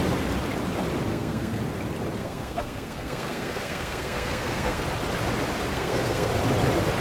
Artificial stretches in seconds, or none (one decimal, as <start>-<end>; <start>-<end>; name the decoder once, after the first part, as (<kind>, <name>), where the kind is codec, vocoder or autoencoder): 1.1-1.6 (codec, SNAC); 2.2-4.8; 5.7-6.3